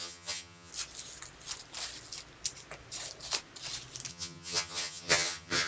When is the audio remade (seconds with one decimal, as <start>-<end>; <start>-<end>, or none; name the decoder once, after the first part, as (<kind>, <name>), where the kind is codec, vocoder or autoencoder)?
0.0-0.7 (vocoder, HiFi-GAN); 4.1-5.7